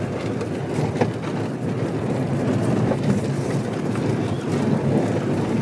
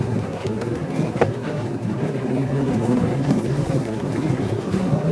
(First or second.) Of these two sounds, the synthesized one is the second